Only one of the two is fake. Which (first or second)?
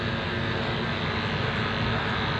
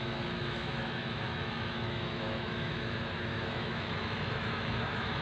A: second